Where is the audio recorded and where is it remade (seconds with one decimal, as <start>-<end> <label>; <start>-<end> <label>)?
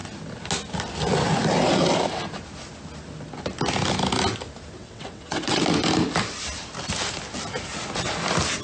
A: 0.0-4.8 recorded; 4.8-5.6 remade; 5.6-8.6 recorded